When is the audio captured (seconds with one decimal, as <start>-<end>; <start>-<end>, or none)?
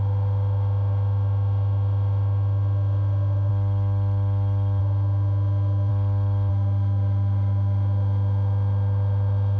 3.5-4.8; 5.9-6.5